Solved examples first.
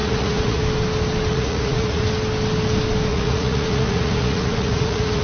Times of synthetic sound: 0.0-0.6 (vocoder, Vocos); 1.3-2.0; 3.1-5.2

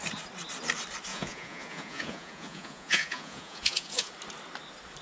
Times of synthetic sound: 1.1-4.1 (vocoder, Vocos)

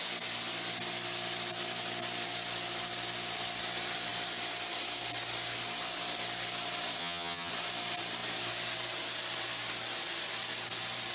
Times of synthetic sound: 7.0-7.5 (vocoder, HiFi-GAN)

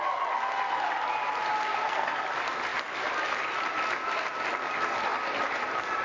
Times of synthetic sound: 1.7-2.2 (codec, SNAC)

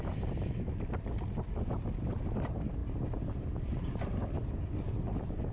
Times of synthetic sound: none

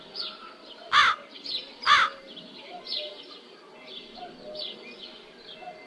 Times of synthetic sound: none

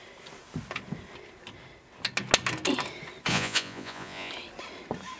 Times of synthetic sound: 3.3-4.3 (vocoder, Vocos)